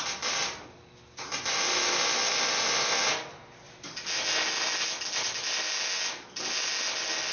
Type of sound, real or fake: real